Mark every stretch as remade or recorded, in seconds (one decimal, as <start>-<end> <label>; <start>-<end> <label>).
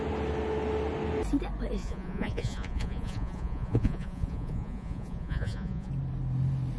0.0-1.8 recorded; 1.8-5.9 remade; 5.9-6.8 recorded